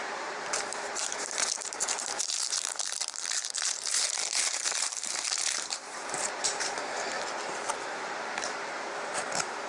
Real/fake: fake